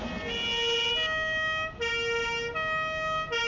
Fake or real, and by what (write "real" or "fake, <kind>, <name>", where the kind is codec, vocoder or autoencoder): real